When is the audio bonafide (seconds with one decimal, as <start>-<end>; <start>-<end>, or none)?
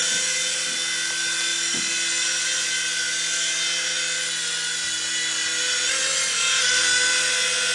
0.0-7.7